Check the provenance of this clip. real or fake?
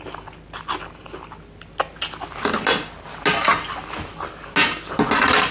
real